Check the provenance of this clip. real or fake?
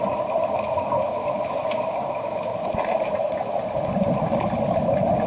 real